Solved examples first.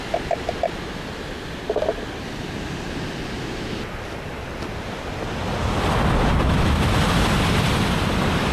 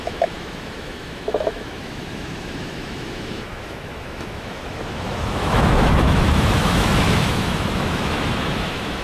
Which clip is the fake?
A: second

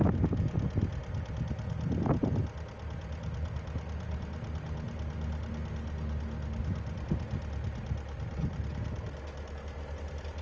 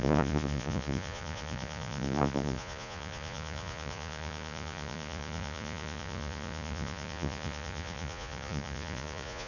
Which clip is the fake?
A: second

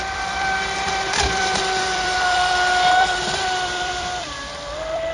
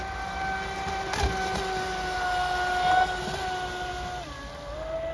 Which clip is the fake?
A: first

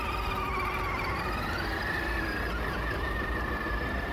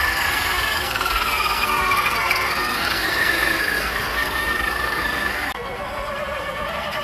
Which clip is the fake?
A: second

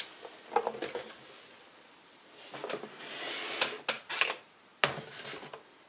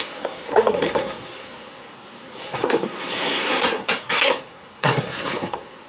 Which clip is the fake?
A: second